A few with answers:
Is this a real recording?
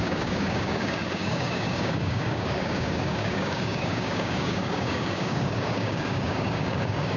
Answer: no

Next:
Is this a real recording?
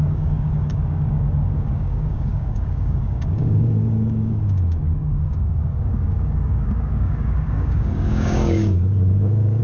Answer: no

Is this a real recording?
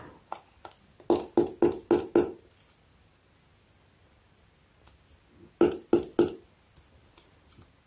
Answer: yes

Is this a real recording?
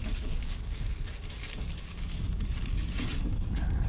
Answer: no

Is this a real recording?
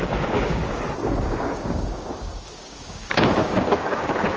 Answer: no